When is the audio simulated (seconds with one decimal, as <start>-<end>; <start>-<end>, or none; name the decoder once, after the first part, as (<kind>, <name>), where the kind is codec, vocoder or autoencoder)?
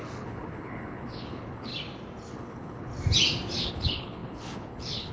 0.0-1.7 (codec, HILCodec); 2.3-2.9; 3.7-5.1